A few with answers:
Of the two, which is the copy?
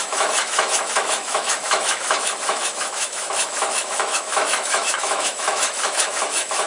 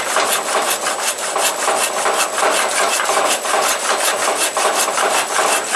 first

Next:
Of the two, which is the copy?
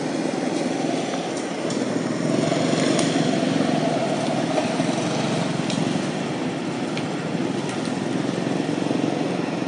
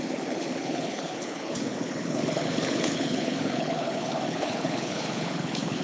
second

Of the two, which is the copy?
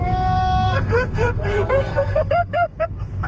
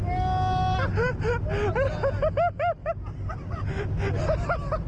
first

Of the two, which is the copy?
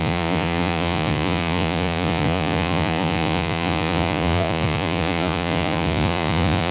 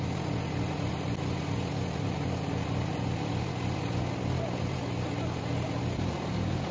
first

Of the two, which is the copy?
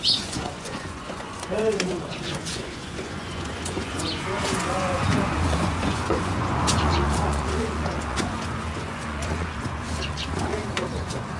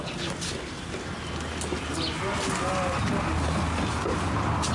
first